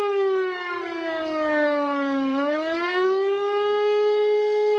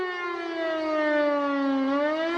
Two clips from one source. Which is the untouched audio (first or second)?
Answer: second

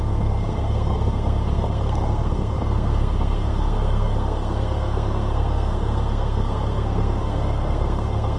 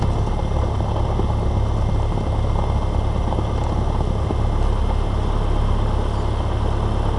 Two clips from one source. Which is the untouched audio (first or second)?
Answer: second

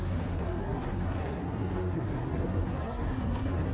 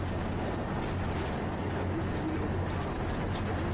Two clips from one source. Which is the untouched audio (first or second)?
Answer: second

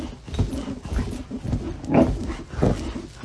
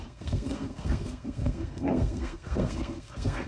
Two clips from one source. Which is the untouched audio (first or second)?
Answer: first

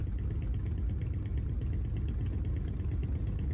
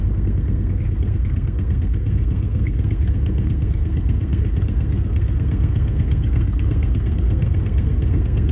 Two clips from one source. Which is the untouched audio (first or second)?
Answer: first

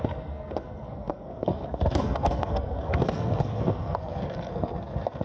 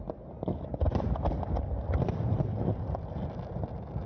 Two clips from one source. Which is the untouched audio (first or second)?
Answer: second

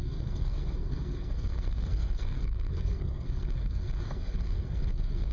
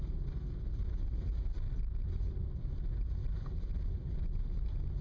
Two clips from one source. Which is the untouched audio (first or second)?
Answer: second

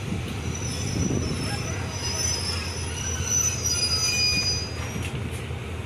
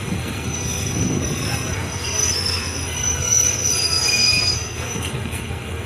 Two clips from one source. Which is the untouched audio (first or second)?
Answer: first